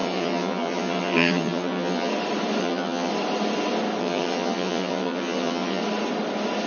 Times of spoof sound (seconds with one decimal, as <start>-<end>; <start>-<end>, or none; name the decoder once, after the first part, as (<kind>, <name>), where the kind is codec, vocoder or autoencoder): 0.0-2.1 (vocoder, HiFi-GAN); 2.6-3.1; 4.0-5.8